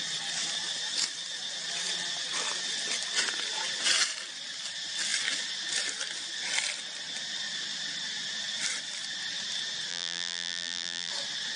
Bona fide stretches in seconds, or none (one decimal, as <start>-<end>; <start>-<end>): 0.0-9.9; 11.1-11.6